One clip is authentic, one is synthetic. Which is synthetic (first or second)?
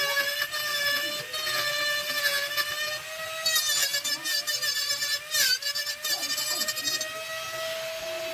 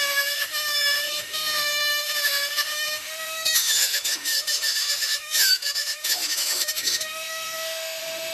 second